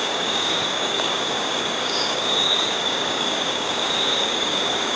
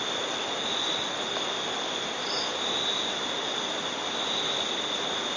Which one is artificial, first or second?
first